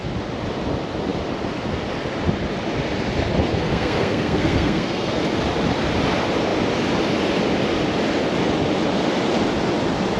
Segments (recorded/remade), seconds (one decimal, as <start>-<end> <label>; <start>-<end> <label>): 0.0-3.5 recorded; 3.5-5.2 remade; 5.2-10.2 recorded